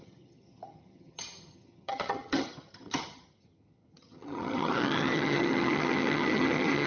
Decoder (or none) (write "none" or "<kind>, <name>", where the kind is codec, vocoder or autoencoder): vocoder, HiFi-GAN